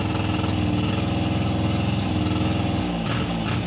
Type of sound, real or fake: real